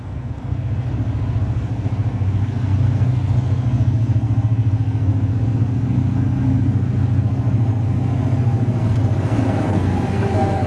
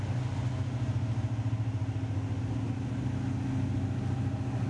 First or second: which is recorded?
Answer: second